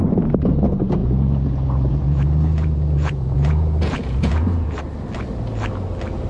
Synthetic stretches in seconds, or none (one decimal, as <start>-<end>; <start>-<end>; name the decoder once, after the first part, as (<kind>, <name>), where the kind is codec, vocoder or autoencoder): 1.0-4.8 (vocoder, Vocos)